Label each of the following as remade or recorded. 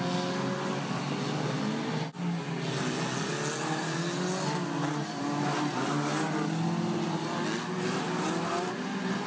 recorded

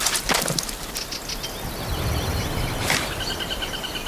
recorded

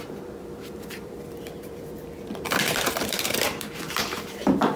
remade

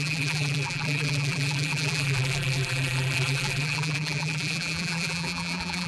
remade